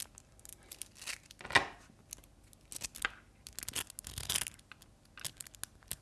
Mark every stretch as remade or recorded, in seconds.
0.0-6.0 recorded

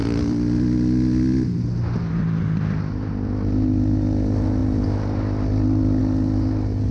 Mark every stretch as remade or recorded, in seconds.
0.0-6.9 recorded

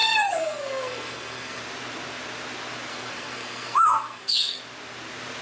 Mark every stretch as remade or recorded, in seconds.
0.0-1.6 remade; 1.6-2.9 recorded; 2.9-4.6 remade; 4.6-5.4 recorded

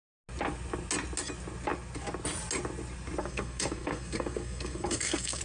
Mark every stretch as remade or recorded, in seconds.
0.0-3.2 recorded; 3.2-5.4 remade

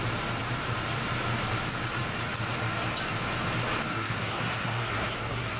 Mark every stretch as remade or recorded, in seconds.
0.0-3.9 recorded; 3.9-5.6 remade

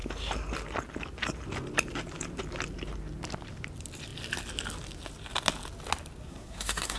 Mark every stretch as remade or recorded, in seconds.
0.0-6.2 recorded; 6.2-7.0 remade

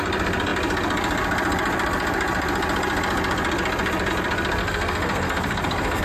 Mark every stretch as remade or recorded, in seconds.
0.0-4.6 recorded; 4.6-6.0 remade

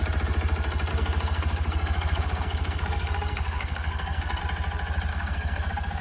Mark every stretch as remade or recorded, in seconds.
0.0-0.9 recorded; 0.9-4.4 remade; 4.4-5.1 recorded; 5.1-6.0 remade